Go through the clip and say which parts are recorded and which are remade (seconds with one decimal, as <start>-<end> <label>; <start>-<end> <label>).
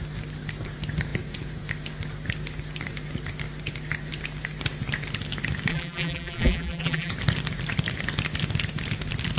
0.0-5.7 recorded; 5.7-7.1 remade; 7.1-9.4 recorded